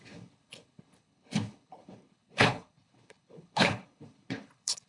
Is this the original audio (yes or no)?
no